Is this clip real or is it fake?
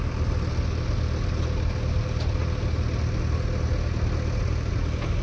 real